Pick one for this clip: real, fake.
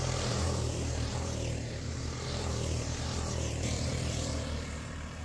fake